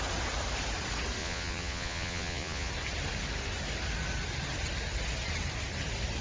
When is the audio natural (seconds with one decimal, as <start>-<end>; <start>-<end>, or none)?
0.0-1.2; 2.7-6.2